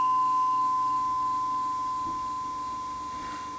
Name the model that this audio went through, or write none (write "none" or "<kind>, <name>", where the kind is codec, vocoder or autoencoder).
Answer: autoencoder, DAC-VAE